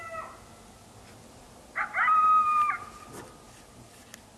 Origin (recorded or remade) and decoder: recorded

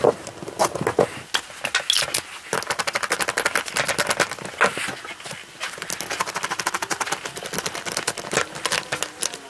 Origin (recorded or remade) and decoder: recorded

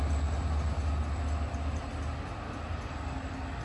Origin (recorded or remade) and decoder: recorded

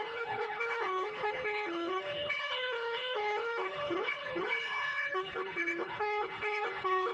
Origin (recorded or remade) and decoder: remade, codec, HILCodec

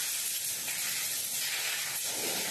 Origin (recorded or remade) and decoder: recorded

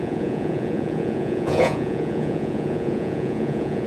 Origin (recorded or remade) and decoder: remade, vocoder, Vocos